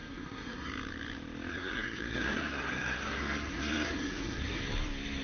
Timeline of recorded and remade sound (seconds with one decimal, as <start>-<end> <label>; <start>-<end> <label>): 0.0-0.7 remade; 0.7-1.5 recorded; 1.5-4.6 remade; 4.6-5.2 recorded